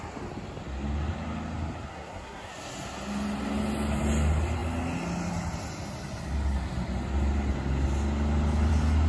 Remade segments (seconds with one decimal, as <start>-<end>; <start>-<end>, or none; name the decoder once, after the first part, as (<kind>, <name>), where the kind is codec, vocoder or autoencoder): 1.9-2.5 (codec, SNAC)